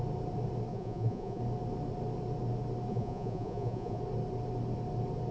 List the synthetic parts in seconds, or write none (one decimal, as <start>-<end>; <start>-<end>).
0.7-1.4; 2.9-4.0